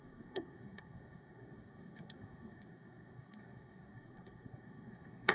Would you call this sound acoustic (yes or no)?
no